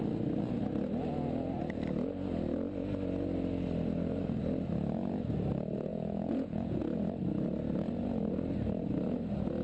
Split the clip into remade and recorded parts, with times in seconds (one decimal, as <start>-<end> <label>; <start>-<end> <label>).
0.0-5.9 recorded; 5.9-6.8 remade; 6.8-9.6 recorded